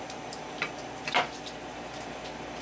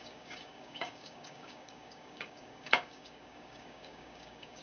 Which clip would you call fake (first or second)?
second